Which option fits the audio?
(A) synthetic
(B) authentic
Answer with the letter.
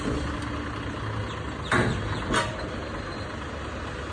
B